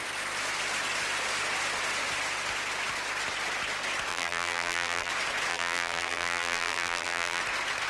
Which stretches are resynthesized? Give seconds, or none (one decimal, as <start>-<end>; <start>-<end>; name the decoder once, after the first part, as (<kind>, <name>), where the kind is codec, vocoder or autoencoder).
4.1-5.1 (vocoder, BigVGAN v2); 5.5-7.4